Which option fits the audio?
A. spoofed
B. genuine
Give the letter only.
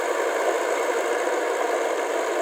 B